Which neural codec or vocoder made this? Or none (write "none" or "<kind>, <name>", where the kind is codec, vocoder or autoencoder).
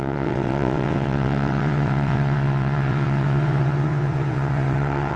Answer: vocoder, WaveNeXt